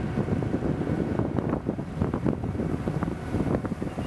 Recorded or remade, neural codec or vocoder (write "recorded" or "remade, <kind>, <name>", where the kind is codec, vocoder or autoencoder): remade, vocoder, BigVGAN v2